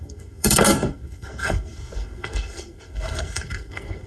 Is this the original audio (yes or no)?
no